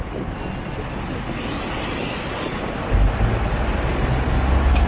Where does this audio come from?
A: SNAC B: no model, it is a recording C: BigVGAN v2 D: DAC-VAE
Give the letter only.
B